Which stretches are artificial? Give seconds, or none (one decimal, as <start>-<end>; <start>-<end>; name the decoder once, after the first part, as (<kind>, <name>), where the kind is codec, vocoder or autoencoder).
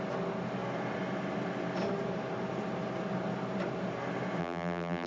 4.4-5.1 (vocoder, BigVGAN v2)